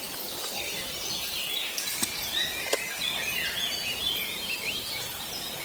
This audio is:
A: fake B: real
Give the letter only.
B